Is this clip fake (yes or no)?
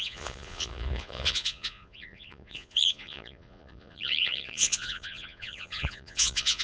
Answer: yes